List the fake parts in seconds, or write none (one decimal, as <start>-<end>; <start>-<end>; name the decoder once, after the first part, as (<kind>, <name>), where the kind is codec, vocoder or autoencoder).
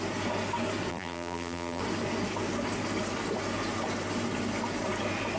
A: 0.9-1.8 (vocoder, BigVGAN v2)